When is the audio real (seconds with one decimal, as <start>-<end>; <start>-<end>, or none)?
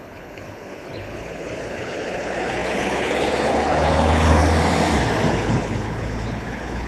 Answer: 4.4-5.3